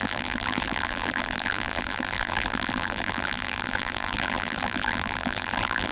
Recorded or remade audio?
remade